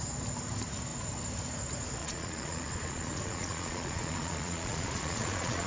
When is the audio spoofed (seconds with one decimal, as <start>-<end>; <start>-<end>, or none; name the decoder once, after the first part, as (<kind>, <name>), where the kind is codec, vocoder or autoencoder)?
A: 2.0-5.7 (vocoder, Vocos)